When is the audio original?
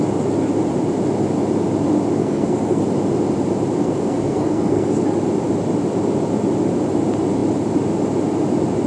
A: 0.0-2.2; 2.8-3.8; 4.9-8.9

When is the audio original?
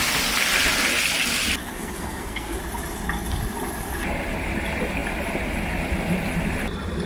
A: 0.0-1.6; 2.6-7.1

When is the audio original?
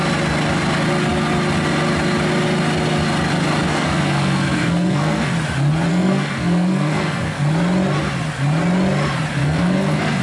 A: 0.0-3.7; 5.3-5.9; 7.4-9.4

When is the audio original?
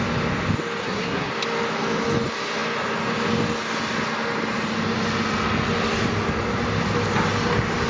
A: 0.0-0.8; 1.3-7.9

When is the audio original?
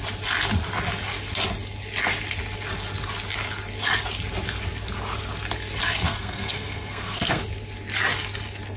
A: 0.0-5.8; 7.4-8.8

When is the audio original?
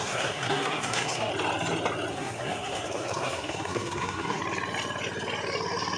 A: 1.3-2.1; 4.4-6.0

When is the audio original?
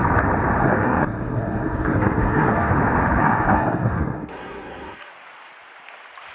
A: 0.0-0.6; 2.7-3.2; 5.1-6.3